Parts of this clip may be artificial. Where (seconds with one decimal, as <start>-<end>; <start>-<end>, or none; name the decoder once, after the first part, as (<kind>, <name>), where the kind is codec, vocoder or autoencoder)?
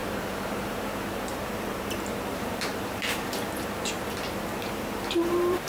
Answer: 0.0-5.7 (vocoder, BigVGAN v2)